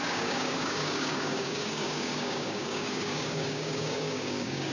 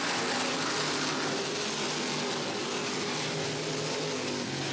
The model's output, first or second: first